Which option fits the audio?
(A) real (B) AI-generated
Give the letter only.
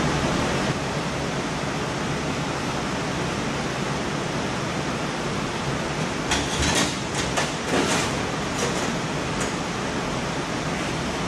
B